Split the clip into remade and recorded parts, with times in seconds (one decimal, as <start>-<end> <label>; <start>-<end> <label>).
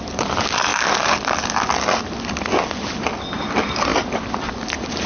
0.0-5.1 recorded